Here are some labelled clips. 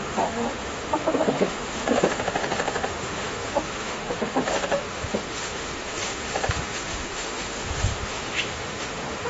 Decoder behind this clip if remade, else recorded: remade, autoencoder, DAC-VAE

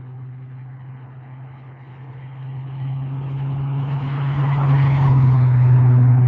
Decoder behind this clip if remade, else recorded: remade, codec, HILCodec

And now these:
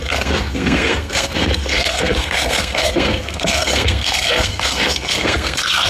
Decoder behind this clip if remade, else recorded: remade, codec, SNAC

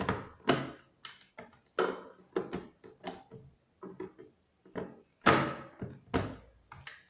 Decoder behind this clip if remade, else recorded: recorded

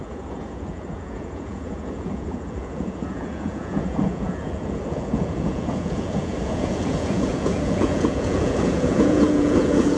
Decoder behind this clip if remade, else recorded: remade, vocoder, Vocos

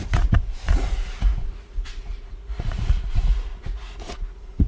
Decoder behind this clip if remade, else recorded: remade, vocoder, Vocos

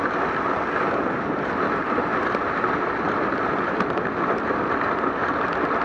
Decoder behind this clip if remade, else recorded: recorded